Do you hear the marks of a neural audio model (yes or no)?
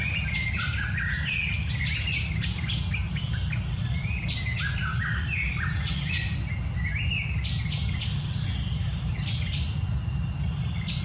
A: no